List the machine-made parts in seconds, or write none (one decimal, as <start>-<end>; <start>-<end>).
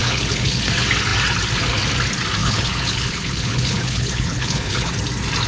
0.0-0.6; 2.4-4.9